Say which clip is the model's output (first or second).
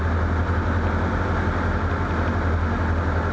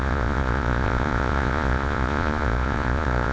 second